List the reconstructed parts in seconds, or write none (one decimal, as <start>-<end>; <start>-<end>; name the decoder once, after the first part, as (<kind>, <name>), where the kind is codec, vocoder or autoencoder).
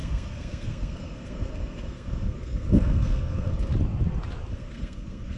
0.0-3.7 (codec, SNAC); 4.5-5.4